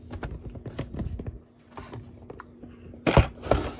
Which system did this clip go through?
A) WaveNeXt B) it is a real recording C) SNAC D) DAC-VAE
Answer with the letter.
B